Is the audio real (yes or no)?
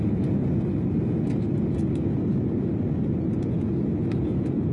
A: yes